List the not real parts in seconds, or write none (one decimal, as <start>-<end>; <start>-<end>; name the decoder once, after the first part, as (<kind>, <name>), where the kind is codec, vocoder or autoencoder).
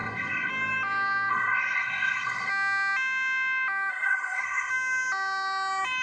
0.0-0.5 (codec, SNAC); 1.3-2.5; 3.9-4.7